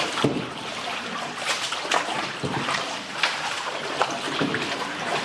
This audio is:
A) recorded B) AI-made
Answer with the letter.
B